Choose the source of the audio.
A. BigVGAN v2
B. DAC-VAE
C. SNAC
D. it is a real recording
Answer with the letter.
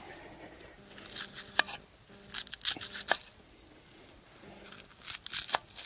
D